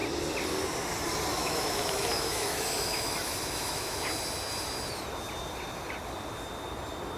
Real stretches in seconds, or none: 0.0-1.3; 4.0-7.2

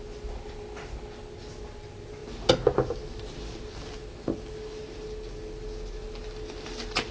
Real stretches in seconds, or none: 0.0-7.1

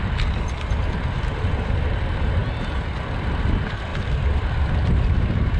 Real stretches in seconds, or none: 0.0-3.9; 4.6-5.6

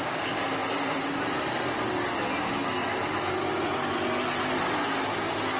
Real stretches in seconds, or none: 0.0-5.6

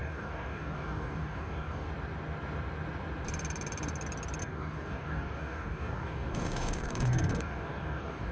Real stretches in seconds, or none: 1.9-4.4